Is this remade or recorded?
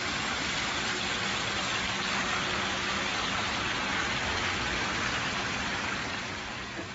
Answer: recorded